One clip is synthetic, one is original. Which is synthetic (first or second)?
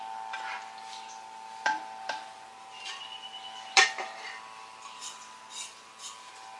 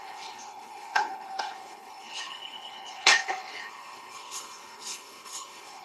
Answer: second